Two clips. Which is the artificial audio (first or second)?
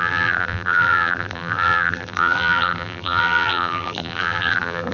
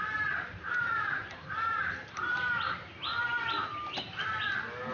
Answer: first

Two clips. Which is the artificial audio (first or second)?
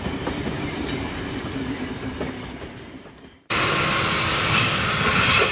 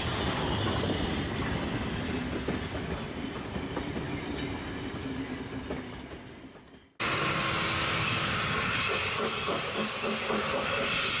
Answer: first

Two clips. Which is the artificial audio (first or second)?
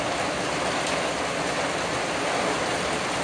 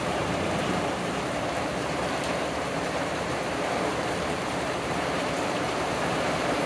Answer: second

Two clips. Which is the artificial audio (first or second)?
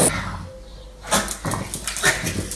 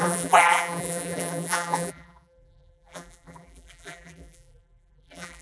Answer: second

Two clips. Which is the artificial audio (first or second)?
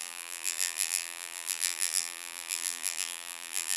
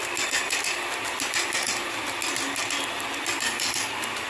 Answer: first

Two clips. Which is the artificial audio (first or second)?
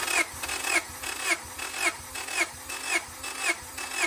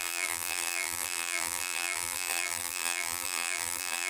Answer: second